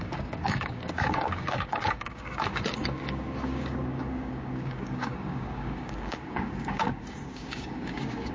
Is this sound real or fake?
fake